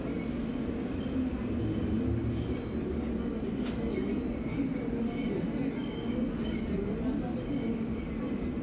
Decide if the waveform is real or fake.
real